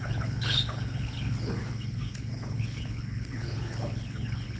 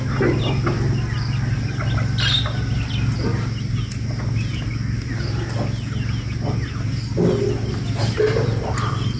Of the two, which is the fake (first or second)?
first